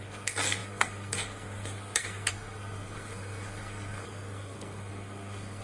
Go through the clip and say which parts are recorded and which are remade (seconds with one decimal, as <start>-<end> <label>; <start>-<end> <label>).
0.0-5.6 remade